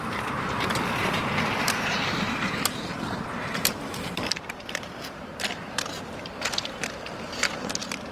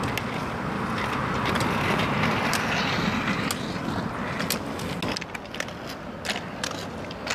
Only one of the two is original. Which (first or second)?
second